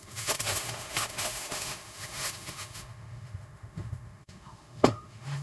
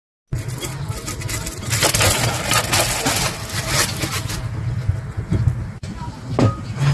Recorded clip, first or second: second